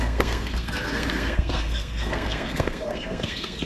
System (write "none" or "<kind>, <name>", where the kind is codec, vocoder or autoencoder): codec, SNAC